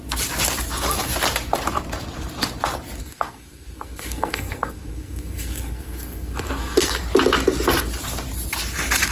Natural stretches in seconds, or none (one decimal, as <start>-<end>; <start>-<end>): 0.0-3.0; 7.0-9.1